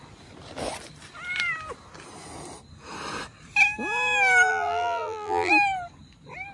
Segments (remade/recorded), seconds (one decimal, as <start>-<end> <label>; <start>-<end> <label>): 0.0-4.5 recorded; 4.5-5.5 remade; 5.5-6.5 recorded